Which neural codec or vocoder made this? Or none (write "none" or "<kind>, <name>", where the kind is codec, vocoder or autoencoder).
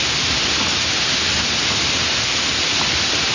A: none